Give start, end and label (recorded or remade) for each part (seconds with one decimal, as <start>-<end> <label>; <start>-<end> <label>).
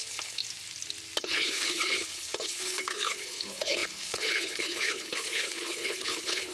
0.0-0.4 remade; 0.4-1.2 recorded; 1.2-6.5 remade